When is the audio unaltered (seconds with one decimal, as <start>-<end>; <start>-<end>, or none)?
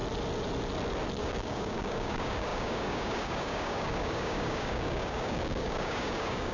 0.0-1.2